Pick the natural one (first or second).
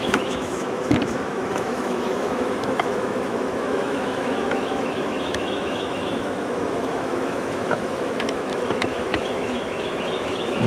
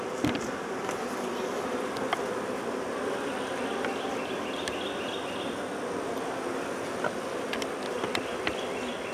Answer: second